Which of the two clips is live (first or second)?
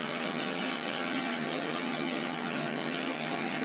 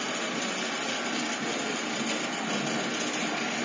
second